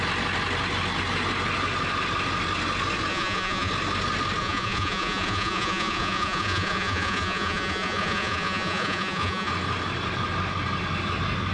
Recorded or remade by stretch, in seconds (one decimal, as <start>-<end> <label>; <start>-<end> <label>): 0.0-3.1 recorded; 3.1-3.7 remade; 3.7-4.4 recorded; 4.4-9.5 remade; 9.5-11.5 recorded